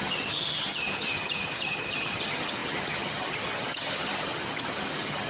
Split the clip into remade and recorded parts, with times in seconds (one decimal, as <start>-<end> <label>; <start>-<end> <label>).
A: 0.0-5.3 remade